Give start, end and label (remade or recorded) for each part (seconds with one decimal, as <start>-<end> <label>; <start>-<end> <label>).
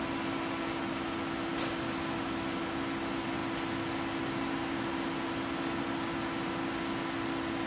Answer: 0.0-7.7 recorded